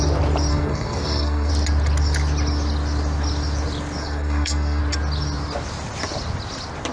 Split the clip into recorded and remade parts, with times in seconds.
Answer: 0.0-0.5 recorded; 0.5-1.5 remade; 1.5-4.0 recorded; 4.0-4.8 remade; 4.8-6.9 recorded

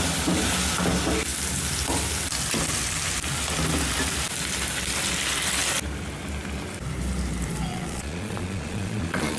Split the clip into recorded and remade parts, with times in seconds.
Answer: 0.0-7.7 recorded; 7.7-9.4 remade

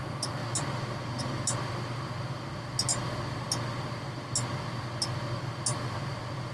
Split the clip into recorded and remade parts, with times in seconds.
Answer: 0.0-6.5 recorded

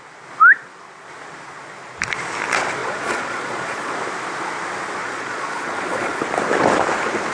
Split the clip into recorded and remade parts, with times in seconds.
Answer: 0.0-2.8 recorded; 2.8-3.9 remade; 3.9-5.0 recorded; 5.0-6.2 remade; 6.2-7.3 recorded

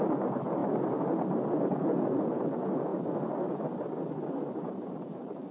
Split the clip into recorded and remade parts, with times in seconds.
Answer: 0.0-2.9 remade; 2.9-4.5 recorded; 4.5-5.5 remade

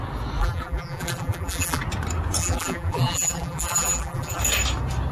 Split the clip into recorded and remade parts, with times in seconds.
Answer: 0.0-0.4 recorded; 0.4-1.8 remade; 1.8-2.4 recorded; 2.4-4.4 remade; 4.4-5.1 recorded

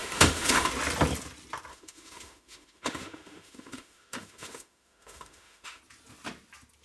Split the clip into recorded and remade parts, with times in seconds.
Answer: 0.0-0.7 remade; 0.7-1.7 recorded; 1.7-5.8 remade; 5.8-6.8 recorded

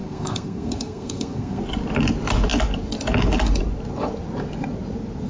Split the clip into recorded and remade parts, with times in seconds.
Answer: 0.0-1.6 remade; 1.6-5.3 recorded